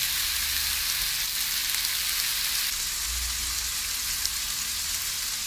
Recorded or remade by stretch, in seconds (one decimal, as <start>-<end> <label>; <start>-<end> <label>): 0.0-5.5 recorded